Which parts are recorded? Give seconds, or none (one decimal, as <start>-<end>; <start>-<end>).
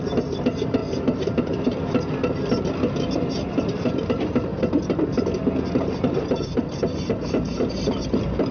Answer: 0.8-3.2; 4.5-5.7